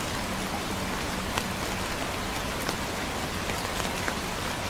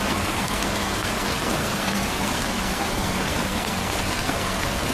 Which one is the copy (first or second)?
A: second